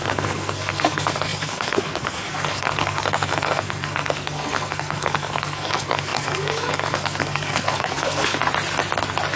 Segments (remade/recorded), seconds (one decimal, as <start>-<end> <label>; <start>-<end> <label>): 0.0-8.4 remade; 8.4-9.4 recorded